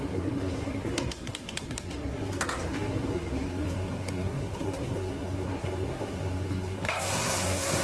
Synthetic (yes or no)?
yes